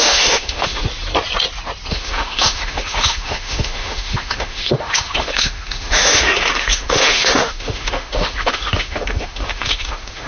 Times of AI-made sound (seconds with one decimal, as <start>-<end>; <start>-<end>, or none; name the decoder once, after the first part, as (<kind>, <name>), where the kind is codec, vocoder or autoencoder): 0.0-0.8 (autoencoder, DAC-VAE); 1.9-10.3